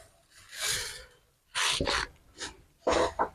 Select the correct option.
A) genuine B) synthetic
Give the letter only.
A